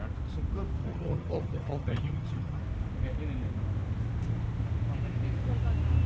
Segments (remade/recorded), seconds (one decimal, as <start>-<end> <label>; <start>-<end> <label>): 0.0-0.8 recorded; 0.8-2.6 remade; 2.6-6.1 recorded